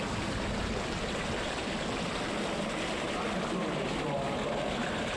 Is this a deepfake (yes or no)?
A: no